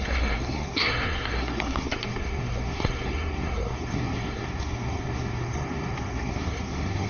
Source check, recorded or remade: remade